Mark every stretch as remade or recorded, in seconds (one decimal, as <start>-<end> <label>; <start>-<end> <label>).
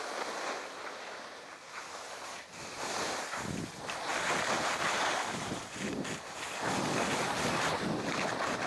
0.0-8.7 recorded